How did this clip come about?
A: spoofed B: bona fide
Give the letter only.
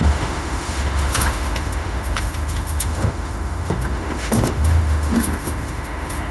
A